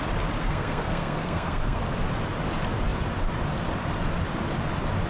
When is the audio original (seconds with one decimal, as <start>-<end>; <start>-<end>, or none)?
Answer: 0.0-0.4; 1.8-5.1